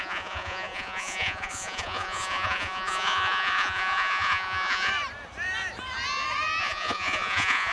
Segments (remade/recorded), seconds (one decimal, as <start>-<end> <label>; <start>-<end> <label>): 0.0-4.9 remade; 4.9-6.6 recorded; 6.6-7.7 remade